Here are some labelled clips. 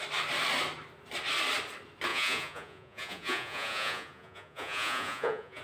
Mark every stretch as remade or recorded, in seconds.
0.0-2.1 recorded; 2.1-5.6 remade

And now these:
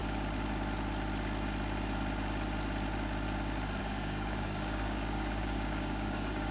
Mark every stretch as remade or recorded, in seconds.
0.0-3.8 recorded; 3.8-6.5 remade

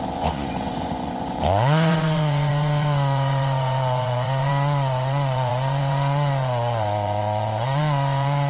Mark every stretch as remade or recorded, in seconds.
0.0-8.5 remade

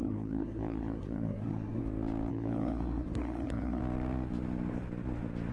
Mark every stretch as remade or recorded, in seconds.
0.0-1.8 remade; 1.8-2.3 recorded; 2.3-3.8 remade; 3.8-5.5 recorded

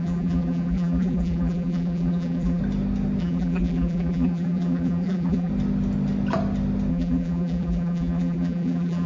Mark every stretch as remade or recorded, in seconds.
0.0-2.6 remade; 2.6-3.2 recorded; 3.2-5.5 remade; 5.5-6.9 recorded; 6.9-9.1 remade

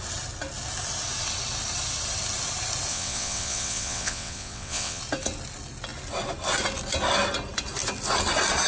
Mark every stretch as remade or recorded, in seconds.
0.0-2.9 recorded; 2.9-5.0 remade; 5.0-8.7 recorded

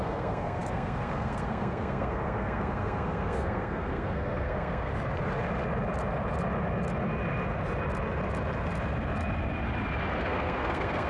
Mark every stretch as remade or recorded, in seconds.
0.0-4.9 remade; 4.9-10.2 recorded; 10.2-11.1 remade